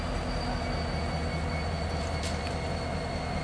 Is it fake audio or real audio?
real